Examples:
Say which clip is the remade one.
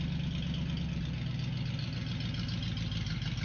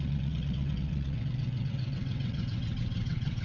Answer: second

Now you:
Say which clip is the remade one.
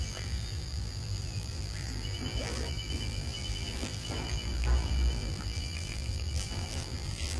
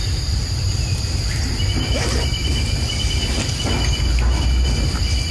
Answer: first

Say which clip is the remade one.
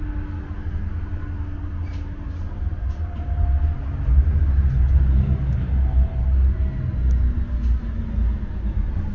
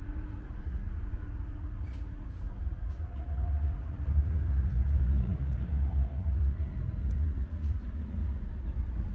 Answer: second